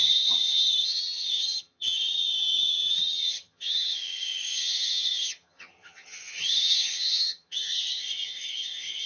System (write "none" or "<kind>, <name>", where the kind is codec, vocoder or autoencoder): vocoder, HiFi-GAN